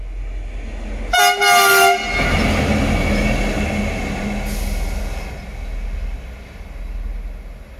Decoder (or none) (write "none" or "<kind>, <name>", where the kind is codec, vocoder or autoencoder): none